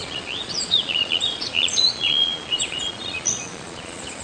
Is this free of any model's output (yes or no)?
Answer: no